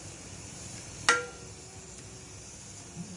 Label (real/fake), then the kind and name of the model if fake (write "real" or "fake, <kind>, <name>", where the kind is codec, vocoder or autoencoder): real